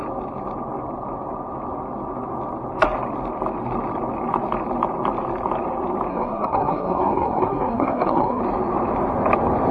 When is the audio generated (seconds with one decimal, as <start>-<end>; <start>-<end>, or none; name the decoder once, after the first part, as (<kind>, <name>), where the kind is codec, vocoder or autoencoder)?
6.1-8.4 (codec, SNAC)